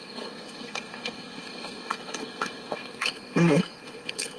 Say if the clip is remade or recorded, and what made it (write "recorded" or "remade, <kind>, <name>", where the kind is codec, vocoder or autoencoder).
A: remade, codec, SNAC